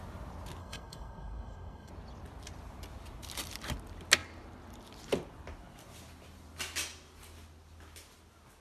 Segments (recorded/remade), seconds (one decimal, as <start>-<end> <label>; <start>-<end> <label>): 0.0-0.6 recorded; 0.6-1.9 remade; 1.9-8.6 recorded